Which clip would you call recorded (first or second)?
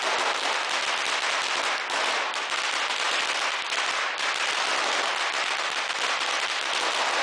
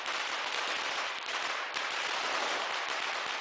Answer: first